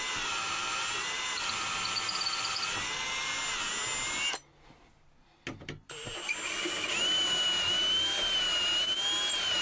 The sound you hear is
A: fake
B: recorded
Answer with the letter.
B